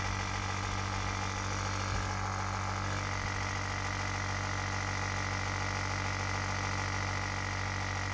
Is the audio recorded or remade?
recorded